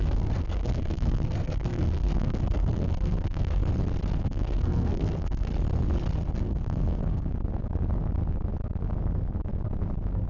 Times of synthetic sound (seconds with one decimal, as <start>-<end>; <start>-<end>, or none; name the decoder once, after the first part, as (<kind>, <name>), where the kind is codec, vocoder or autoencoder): 0.0-3.6 (codec, SNAC); 4.2-5.5; 6.4-7.3